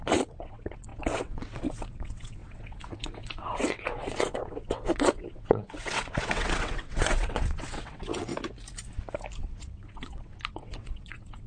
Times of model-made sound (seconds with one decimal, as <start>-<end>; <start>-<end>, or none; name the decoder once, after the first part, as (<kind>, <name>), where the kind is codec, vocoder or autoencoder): 0.0-8.3 (vocoder, WaveNeXt); 9.4-11.5